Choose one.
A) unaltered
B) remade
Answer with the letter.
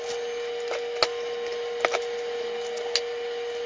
A